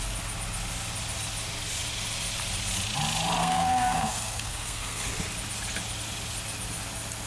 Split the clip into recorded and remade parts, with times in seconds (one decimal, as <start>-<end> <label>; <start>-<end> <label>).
0.0-3.4 recorded; 3.4-5.1 remade; 5.1-7.3 recorded